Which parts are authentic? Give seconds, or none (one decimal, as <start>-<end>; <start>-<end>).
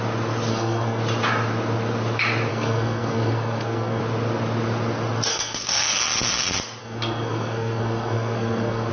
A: 0.0-0.5; 1.0-2.5; 4.0-5.3; 6.0-6.8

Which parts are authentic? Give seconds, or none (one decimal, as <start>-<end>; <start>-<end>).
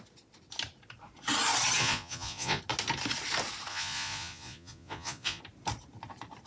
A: 0.0-1.8; 2.6-3.7; 5.4-6.5